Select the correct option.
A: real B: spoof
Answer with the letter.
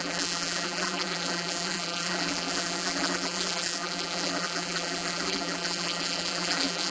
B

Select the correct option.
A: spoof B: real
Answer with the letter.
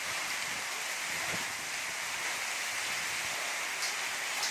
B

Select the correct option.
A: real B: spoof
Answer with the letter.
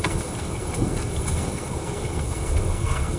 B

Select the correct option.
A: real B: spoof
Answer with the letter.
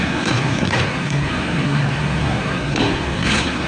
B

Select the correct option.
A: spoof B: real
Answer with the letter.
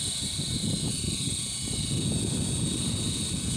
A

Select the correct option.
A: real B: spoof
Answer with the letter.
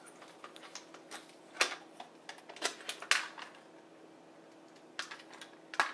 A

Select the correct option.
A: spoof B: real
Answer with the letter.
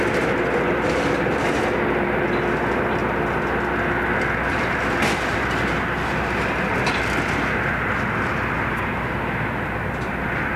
B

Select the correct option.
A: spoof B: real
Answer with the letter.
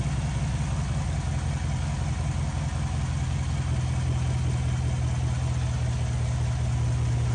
B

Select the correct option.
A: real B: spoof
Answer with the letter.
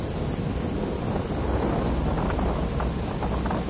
A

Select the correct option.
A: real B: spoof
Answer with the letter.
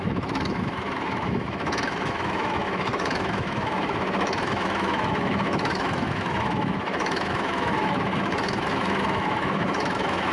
B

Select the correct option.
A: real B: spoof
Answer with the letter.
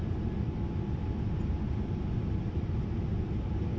A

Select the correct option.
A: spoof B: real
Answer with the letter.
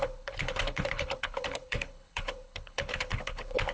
A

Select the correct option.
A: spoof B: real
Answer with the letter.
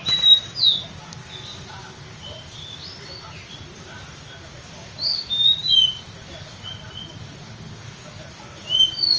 B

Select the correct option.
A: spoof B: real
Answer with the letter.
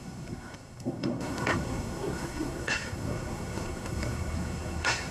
A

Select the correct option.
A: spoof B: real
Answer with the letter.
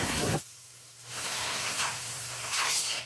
A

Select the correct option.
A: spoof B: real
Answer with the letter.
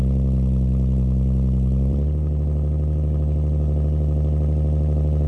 A